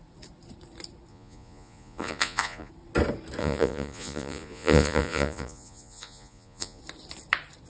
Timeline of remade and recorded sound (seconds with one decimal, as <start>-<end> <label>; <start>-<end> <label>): 0.0-1.1 recorded; 1.1-2.7 remade; 2.7-3.4 recorded; 3.4-6.8 remade; 6.8-7.7 recorded